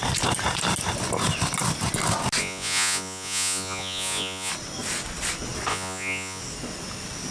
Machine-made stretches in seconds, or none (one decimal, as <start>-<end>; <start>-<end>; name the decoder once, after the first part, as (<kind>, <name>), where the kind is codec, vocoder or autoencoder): 2.4-4.5 (vocoder, Vocos); 5.7-6.4

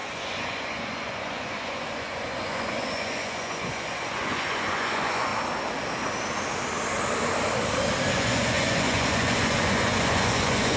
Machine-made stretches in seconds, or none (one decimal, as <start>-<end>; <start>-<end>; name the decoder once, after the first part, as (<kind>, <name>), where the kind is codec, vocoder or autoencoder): 0.0-5.3 (vocoder, Vocos); 8.1-10.8